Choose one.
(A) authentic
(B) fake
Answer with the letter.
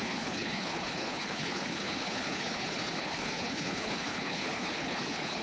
B